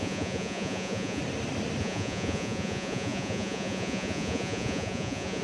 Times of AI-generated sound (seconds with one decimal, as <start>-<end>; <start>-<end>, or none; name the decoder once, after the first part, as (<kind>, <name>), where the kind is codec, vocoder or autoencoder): 0.0-1.2 (vocoder, Vocos); 1.8-5.4